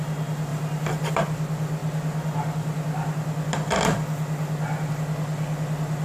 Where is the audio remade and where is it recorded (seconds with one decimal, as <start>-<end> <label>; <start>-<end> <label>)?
0.0-6.0 recorded